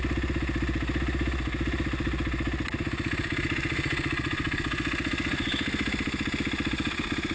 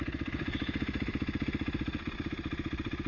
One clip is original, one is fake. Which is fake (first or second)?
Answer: second